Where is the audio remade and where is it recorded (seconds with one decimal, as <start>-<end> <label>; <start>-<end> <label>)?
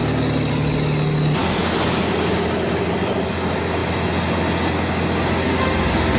0.0-6.2 recorded